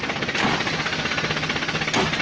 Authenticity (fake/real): real